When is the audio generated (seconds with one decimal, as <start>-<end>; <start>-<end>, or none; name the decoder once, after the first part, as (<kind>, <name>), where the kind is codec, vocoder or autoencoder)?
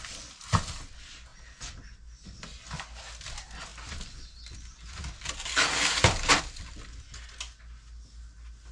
none